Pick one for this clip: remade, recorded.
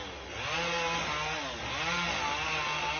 recorded